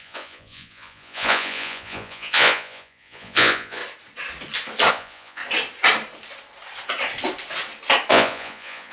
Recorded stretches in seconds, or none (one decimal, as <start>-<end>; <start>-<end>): 3.8-4.9; 5.4-8.1